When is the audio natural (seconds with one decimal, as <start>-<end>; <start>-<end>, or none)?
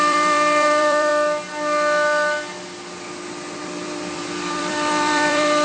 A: 1.1-3.6